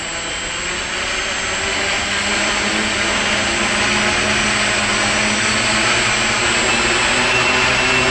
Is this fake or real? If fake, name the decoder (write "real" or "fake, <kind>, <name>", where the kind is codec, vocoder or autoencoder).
real